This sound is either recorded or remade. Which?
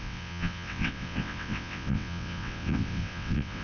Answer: remade